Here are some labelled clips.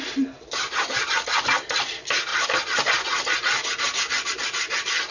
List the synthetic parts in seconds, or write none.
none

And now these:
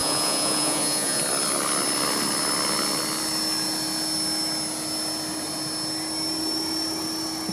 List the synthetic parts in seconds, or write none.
0.0-1.2 (vocoder, Vocos)

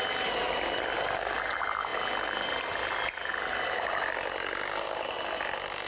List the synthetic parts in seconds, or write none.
0.0-0.8 (vocoder, BigVGAN v2)